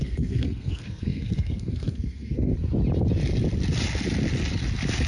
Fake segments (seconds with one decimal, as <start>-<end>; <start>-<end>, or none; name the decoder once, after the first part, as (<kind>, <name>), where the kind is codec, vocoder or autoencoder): 0.0-2.5 (codec, SNAC)